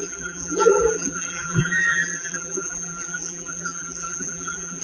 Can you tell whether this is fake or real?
fake